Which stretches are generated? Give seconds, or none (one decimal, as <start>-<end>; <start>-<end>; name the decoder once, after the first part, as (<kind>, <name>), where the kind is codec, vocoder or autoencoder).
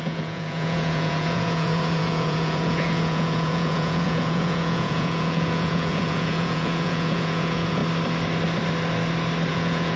0.0-7.8 (vocoder, Vocos); 9.5-10.0